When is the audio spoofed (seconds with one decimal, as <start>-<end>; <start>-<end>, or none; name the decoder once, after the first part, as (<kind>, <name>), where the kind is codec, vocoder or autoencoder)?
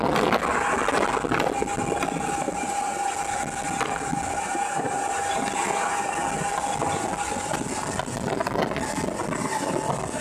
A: none